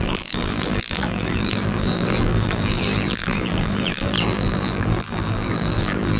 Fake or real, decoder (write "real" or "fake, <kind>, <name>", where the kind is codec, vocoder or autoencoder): fake, vocoder, BigVGAN v2